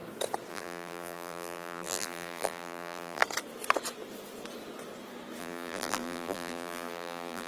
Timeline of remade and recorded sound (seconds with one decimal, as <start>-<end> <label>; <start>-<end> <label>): 0.0-0.5 recorded; 0.5-3.2 remade; 3.2-5.4 recorded; 5.4-7.5 remade